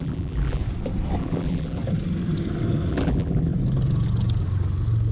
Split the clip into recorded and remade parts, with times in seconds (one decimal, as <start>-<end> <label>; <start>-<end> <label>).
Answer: 0.0-0.6 remade; 0.6-1.2 recorded; 1.2-1.8 remade; 1.8-2.9 recorded; 2.9-3.5 remade; 3.5-5.1 recorded